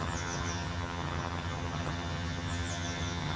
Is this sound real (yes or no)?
no